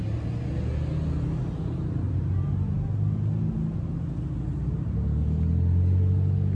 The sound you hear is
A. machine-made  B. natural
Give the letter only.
B